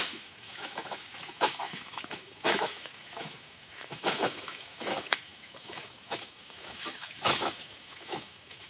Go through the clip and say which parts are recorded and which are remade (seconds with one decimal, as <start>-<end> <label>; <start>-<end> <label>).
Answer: 0.0-8.7 remade